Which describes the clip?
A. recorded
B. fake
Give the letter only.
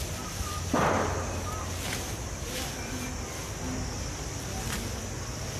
A